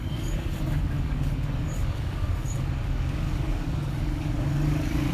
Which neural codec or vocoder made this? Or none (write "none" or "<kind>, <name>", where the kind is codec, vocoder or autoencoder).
codec, DAC